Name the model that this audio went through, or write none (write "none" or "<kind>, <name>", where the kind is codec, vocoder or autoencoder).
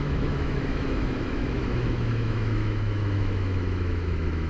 autoencoder, DAC-VAE